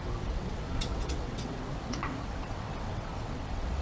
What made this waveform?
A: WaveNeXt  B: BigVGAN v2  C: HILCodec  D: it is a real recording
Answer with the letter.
A